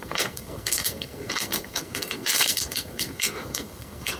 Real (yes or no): no